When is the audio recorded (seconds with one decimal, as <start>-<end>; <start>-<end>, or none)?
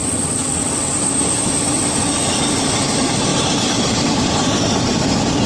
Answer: 0.9-5.5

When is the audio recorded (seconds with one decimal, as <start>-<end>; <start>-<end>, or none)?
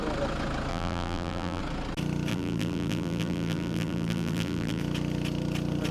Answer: 0.0-0.7; 1.6-2.3; 4.8-5.9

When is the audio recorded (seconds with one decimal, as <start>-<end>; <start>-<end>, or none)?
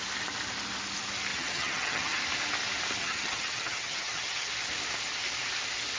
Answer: 0.0-1.3; 2.2-3.0; 4.5-6.0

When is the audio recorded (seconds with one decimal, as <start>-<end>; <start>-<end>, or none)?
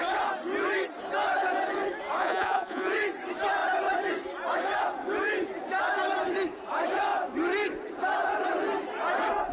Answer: 0.0-2.2; 2.9-9.5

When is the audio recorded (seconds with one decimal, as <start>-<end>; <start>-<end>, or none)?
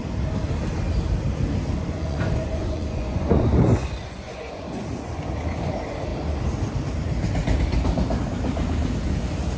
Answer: 0.0-1.7; 5.2-9.6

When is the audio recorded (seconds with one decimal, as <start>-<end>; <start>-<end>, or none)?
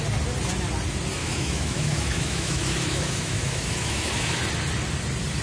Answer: 0.0-1.2; 4.4-5.4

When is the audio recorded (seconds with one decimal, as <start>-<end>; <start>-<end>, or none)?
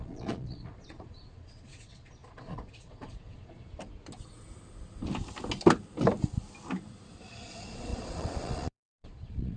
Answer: 3.7-7.3